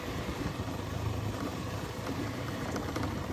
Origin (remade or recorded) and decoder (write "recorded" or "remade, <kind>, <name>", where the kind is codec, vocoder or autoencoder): remade, vocoder, BigVGAN v2